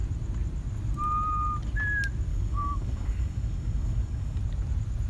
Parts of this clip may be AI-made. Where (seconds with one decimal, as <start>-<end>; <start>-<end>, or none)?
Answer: 2.3-4.4